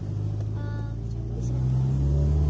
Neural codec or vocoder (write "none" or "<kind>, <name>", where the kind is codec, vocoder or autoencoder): none